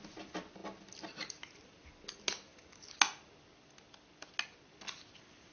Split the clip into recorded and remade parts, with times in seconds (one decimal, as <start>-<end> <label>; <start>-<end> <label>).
0.0-5.5 recorded